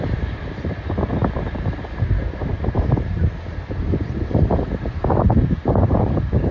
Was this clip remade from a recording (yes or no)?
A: yes